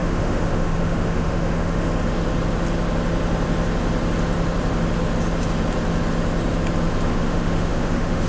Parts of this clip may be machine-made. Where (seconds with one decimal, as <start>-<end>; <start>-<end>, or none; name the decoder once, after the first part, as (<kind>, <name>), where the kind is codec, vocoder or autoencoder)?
0.0-1.9 (autoencoder, DAC-VAE); 7.1-8.3